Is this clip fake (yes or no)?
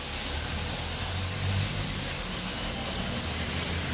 no